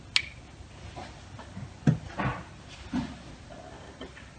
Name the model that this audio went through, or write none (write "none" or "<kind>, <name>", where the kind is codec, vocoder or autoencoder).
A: none